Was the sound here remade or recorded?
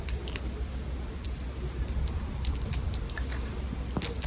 recorded